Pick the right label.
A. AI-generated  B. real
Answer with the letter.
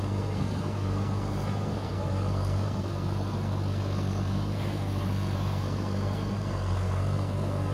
A